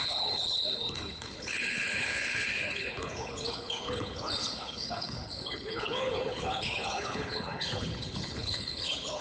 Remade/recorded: remade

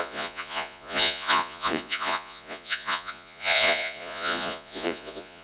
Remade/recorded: remade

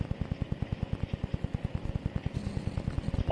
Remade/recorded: recorded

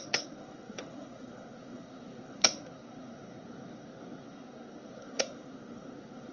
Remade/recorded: remade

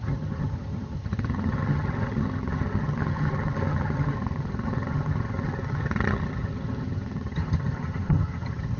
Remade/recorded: remade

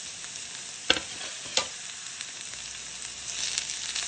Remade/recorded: recorded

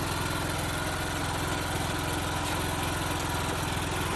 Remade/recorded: recorded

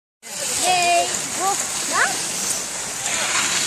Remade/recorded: recorded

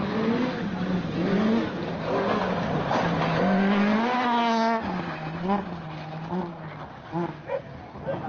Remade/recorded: recorded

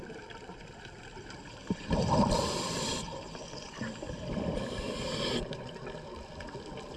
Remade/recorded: remade